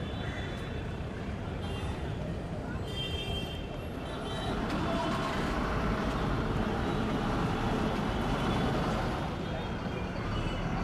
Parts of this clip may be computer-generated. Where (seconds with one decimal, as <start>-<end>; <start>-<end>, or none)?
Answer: 0.0-10.8